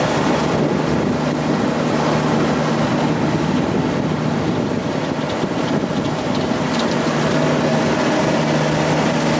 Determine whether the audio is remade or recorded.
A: recorded